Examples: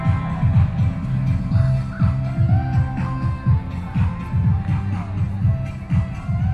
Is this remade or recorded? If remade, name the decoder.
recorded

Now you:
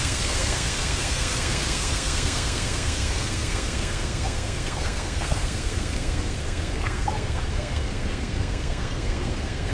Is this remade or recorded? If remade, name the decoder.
remade, codec, SNAC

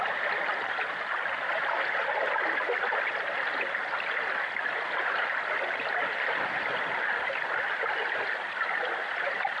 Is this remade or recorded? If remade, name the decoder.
recorded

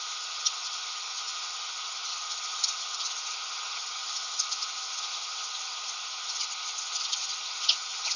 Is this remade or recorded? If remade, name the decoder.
remade, vocoder, HiFi-GAN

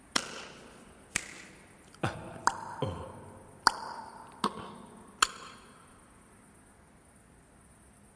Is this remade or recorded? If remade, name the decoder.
recorded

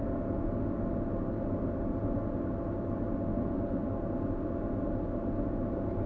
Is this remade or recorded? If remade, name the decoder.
recorded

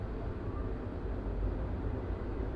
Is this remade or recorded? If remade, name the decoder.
recorded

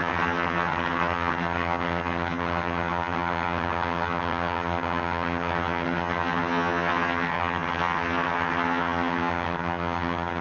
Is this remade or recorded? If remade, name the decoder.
remade, vocoder, HiFi-GAN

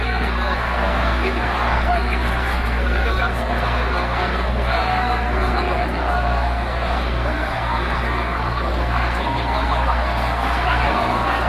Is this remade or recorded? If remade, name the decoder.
remade, codec, SNAC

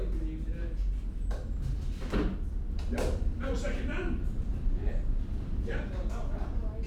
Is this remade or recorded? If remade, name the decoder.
recorded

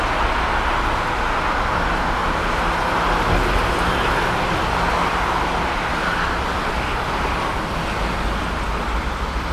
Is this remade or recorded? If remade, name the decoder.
recorded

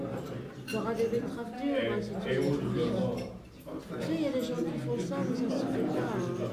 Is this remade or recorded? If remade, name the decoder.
recorded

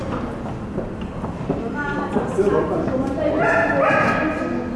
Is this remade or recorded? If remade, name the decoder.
recorded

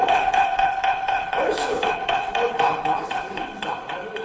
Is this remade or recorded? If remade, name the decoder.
remade, codec, HILCodec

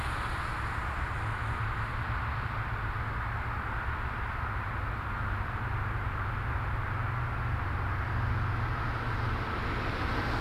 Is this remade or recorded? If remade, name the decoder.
recorded